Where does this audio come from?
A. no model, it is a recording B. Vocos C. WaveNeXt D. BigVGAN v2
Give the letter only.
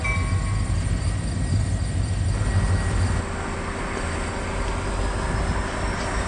A